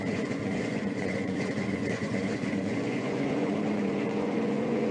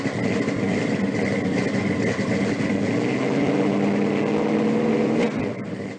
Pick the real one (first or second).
second